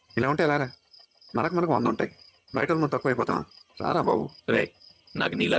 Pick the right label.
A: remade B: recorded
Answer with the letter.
A